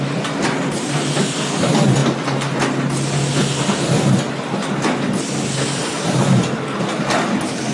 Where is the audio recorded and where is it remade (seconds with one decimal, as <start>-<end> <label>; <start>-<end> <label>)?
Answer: 0.0-7.7 recorded